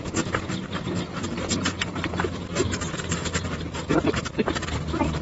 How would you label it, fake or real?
fake